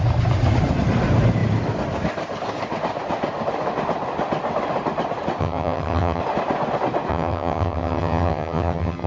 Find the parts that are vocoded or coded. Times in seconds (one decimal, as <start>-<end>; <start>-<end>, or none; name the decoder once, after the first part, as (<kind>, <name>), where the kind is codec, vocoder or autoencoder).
5.4-6.2 (vocoder, HiFi-GAN); 7.1-9.1